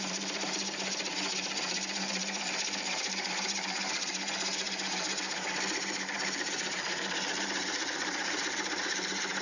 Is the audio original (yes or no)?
no